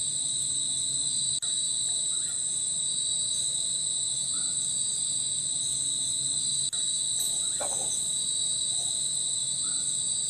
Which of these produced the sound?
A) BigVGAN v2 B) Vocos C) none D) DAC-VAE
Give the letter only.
C